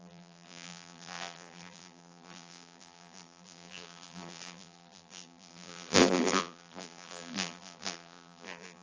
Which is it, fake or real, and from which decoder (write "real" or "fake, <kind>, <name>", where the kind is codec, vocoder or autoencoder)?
fake, vocoder, BigVGAN v2